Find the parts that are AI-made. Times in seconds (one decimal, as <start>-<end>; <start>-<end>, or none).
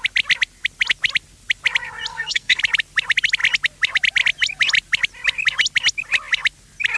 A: 2.1-2.6